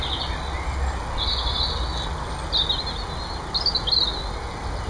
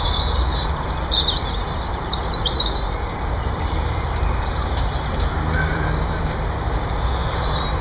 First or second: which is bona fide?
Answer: first